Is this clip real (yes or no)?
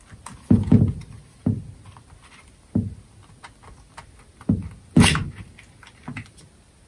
yes